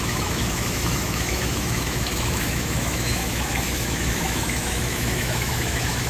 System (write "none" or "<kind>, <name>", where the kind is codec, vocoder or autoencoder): autoencoder, DAC-VAE